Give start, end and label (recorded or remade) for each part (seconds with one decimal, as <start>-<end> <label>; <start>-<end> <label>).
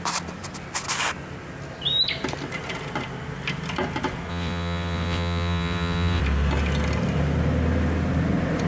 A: 0.0-4.3 recorded; 4.3-6.2 remade; 6.2-8.7 recorded